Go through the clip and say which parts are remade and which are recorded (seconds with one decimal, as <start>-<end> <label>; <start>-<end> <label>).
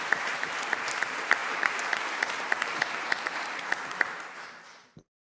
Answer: 0.0-5.2 remade